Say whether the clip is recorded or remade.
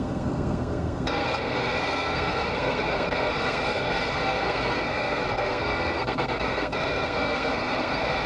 remade